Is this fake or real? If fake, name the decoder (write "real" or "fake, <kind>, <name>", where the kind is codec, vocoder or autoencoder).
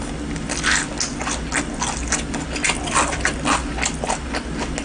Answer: real